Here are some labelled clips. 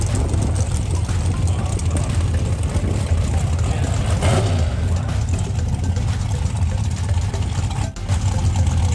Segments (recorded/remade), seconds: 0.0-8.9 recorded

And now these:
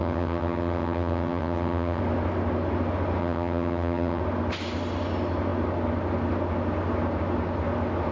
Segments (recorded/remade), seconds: 0.0-2.0 remade; 2.0-3.2 recorded; 3.2-4.2 remade; 4.2-8.1 recorded

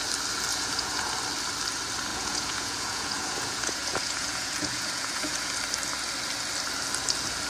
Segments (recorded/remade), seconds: 0.0-0.5 recorded; 0.5-1.1 remade; 1.1-2.1 recorded; 2.1-5.5 remade; 5.5-7.5 recorded

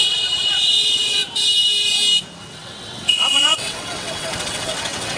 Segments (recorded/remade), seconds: 0.0-1.2 remade; 1.2-2.4 recorded; 2.4-5.2 remade